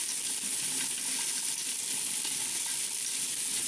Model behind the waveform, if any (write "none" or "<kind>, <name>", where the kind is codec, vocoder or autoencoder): vocoder, BigVGAN v2